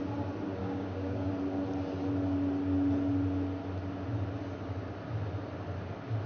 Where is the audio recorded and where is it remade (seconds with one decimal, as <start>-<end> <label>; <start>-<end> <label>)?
0.0-0.6 recorded; 0.6-1.3 remade; 1.3-6.3 recorded